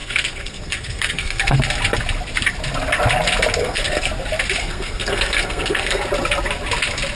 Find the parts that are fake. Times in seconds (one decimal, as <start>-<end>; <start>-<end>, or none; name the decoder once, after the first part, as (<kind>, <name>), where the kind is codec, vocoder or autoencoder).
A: 0.0-1.6 (codec, SNAC); 3.6-4.1; 4.6-6.0